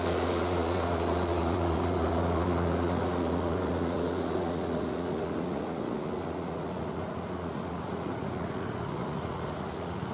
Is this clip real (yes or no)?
no